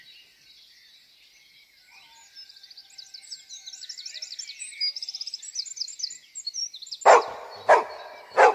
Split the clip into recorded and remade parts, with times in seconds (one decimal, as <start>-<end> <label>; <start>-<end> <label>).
0.0-8.5 recorded